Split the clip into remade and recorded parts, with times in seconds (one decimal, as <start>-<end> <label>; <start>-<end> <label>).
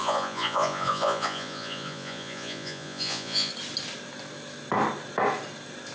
0.0-3.5 remade; 3.5-5.9 recorded